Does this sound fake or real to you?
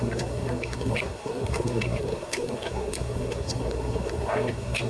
fake